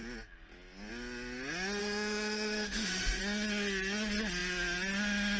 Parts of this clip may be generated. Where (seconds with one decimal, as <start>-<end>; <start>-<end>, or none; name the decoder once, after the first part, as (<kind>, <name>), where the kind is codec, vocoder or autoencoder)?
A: 1.8-3.2 (autoencoder, DAC-VAE)